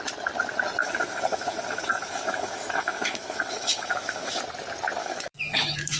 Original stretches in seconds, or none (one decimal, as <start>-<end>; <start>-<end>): 0.0-0.8; 4.4-5.0